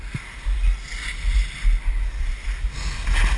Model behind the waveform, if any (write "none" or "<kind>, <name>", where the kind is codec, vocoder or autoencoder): none